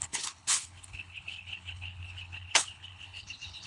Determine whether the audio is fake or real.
fake